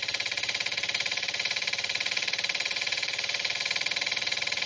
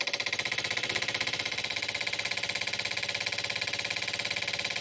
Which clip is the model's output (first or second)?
first